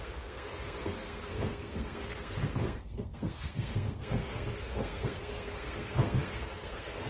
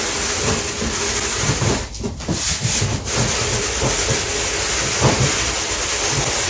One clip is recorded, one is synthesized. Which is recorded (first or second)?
second